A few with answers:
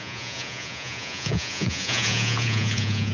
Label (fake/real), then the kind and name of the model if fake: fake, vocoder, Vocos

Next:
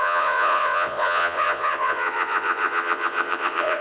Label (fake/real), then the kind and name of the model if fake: fake, vocoder, Vocos